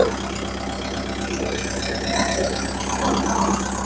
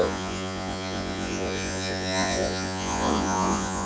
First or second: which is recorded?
first